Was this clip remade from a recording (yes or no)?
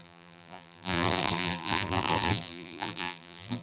yes